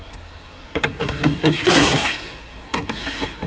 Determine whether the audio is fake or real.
fake